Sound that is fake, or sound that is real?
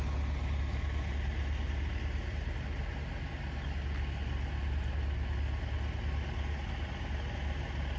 real